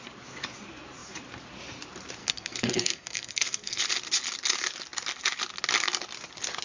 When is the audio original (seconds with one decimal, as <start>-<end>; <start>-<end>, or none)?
0.0-2.2; 3.8-6.6